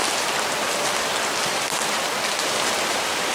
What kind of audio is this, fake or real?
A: real